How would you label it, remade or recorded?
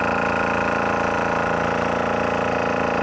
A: recorded